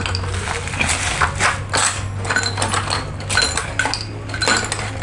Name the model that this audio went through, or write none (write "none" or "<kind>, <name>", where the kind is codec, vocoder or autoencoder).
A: none